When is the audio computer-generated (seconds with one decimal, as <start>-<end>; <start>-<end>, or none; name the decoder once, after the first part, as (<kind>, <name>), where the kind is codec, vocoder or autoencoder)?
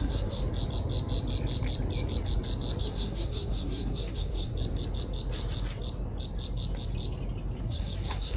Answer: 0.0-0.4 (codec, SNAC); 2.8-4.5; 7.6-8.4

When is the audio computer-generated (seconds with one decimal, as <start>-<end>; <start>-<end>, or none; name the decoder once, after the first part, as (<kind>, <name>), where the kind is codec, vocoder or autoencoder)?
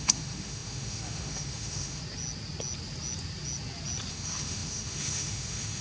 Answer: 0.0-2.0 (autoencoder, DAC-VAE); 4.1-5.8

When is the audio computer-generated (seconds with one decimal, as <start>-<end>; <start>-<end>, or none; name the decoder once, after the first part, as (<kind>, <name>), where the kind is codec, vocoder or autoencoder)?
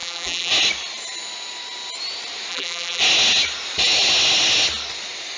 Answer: 0.0-0.5 (vocoder, BigVGAN v2); 2.5-3.0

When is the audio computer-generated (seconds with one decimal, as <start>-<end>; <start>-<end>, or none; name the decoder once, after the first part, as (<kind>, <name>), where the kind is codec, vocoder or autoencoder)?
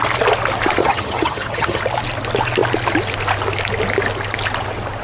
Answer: 0.8-1.8 (vocoder, HiFi-GAN)